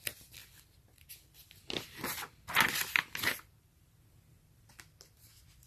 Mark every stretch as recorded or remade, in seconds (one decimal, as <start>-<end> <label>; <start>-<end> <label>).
0.0-5.7 recorded